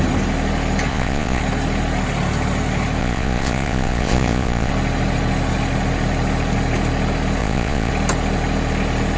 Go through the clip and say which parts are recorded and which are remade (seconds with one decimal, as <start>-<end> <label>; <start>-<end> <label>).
0.0-0.9 recorded; 0.9-1.4 remade; 1.4-3.0 recorded; 3.0-4.7 remade; 4.7-7.4 recorded; 7.4-7.9 remade; 7.9-9.2 recorded

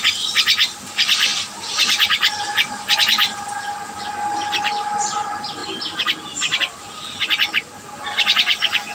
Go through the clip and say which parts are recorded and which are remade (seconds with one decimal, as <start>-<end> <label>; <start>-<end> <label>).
0.0-8.9 recorded

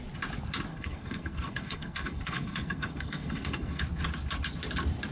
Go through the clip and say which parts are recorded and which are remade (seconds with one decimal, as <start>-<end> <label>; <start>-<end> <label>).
0.0-0.7 recorded; 0.7-3.8 remade; 3.8-5.1 recorded

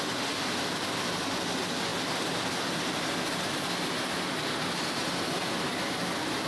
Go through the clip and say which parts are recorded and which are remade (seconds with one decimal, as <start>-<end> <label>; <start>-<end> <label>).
0.0-6.5 recorded

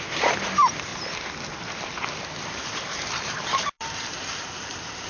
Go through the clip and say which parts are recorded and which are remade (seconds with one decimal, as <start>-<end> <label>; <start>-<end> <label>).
0.0-0.9 remade; 0.9-2.2 recorded; 2.2-5.1 remade